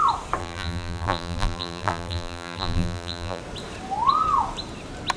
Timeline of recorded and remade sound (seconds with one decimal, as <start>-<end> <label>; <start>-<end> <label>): 0.0-0.4 recorded; 0.4-3.4 remade; 3.4-5.2 recorded